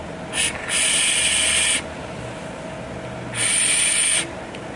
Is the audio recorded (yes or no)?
yes